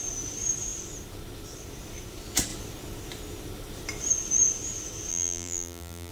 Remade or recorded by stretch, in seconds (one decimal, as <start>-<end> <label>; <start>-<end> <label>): 0.0-5.1 recorded; 5.1-6.1 remade